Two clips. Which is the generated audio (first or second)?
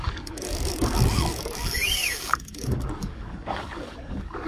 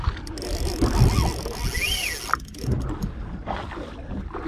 first